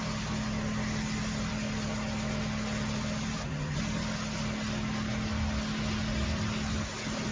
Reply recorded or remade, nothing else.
recorded